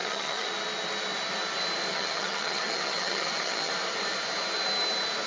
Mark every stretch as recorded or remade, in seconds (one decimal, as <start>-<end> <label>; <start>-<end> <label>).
0.0-0.5 remade; 0.5-1.9 recorded; 1.9-3.7 remade; 3.7-5.3 recorded

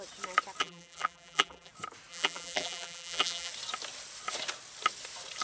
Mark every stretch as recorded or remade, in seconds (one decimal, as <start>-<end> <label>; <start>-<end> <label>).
0.0-0.6 recorded; 0.6-1.7 remade; 1.7-2.1 recorded; 2.1-3.5 remade; 3.5-5.4 recorded

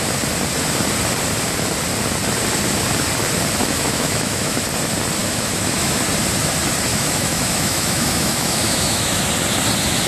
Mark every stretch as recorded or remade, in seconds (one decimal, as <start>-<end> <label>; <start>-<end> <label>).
0.0-3.6 recorded; 3.6-4.6 remade; 4.6-5.2 recorded; 5.2-6.0 remade; 6.0-6.9 recorded; 6.9-9.3 remade; 9.3-10.1 recorded